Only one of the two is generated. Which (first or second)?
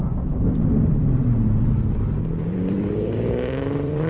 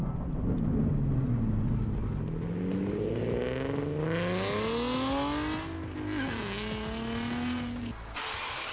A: first